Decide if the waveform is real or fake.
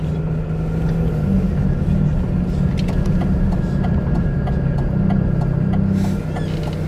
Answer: real